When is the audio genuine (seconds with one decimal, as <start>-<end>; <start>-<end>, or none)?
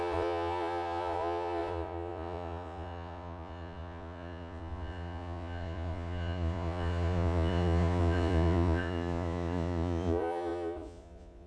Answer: none